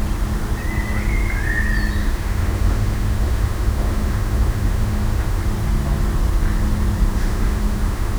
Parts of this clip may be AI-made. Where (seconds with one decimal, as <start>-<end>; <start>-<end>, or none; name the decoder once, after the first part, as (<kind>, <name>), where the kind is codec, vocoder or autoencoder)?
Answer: 2.0-5.4 (autoencoder, DAC-VAE); 7.1-8.2